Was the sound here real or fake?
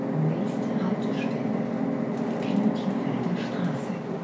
real